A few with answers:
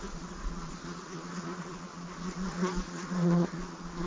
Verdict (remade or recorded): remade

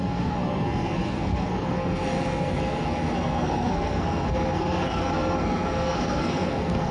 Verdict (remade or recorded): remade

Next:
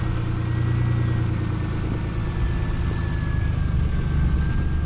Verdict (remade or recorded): recorded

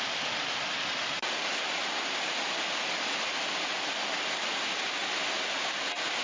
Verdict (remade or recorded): recorded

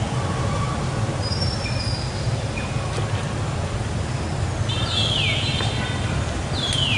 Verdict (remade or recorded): recorded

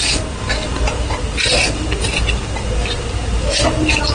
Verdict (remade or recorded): recorded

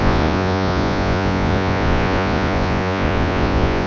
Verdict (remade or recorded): remade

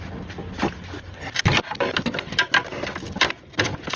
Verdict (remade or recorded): recorded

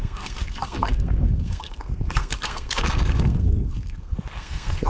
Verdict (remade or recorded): remade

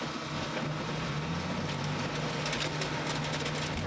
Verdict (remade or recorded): recorded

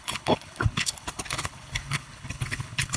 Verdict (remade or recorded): remade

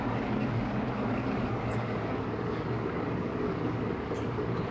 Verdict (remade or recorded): remade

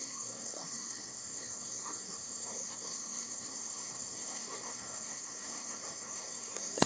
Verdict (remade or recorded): remade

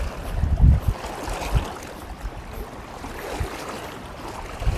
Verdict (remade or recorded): recorded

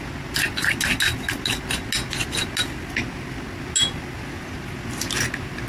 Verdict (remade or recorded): recorded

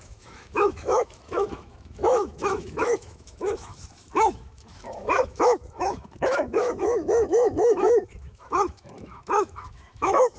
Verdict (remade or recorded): remade